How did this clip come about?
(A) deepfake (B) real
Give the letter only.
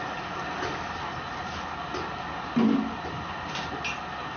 B